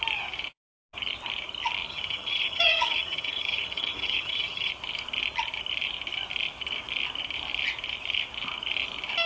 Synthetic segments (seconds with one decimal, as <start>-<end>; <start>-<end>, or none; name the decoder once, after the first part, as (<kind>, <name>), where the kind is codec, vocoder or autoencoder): 1.9-4.7 (vocoder, HiFi-GAN)